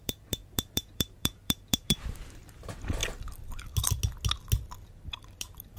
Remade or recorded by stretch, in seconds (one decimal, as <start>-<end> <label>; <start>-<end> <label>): 0.0-3.0 remade; 3.0-5.1 recorded; 5.1-5.8 remade